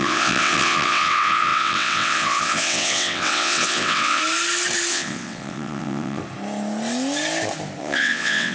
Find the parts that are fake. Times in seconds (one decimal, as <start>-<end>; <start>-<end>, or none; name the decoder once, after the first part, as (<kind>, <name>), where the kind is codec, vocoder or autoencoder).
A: 0.0-4.2 (vocoder, WaveNeXt); 4.9-6.2; 7.8-8.5